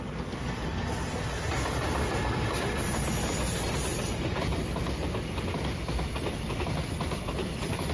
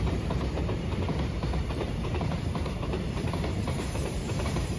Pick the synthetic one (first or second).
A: second